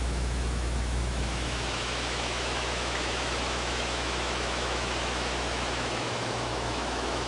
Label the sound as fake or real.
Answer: fake